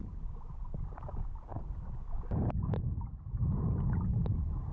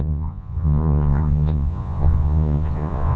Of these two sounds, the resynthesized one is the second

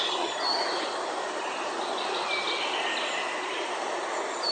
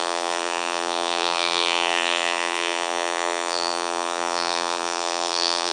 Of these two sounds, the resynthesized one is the second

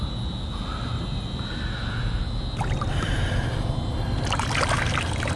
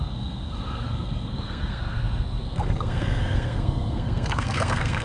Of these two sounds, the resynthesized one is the second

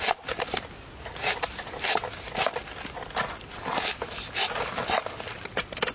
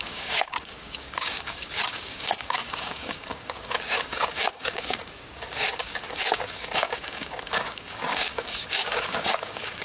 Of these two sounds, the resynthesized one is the second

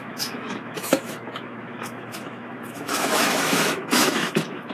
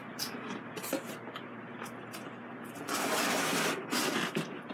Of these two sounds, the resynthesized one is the first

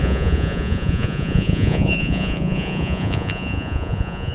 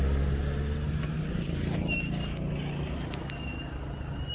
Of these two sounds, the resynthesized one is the first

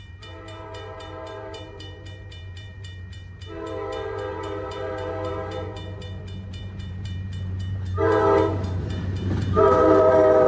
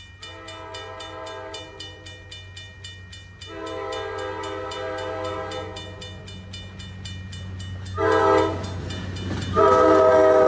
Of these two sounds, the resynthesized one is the first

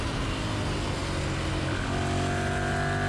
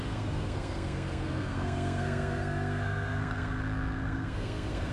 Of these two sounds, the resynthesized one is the second